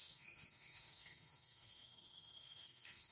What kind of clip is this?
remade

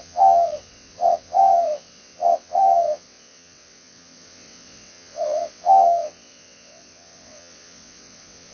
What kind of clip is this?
remade